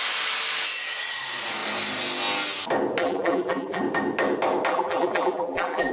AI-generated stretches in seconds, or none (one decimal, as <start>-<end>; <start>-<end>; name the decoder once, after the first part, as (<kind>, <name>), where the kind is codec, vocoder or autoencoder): 3.0-3.8 (vocoder, BigVGAN v2); 4.7-5.9